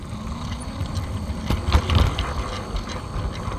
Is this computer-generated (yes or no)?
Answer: no